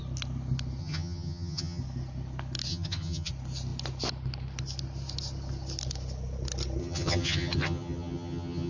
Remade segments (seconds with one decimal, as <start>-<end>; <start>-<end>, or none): 0.8-1.8; 2.7-3.3; 6.8-8.7